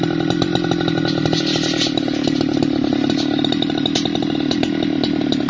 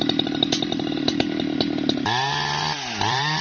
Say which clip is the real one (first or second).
first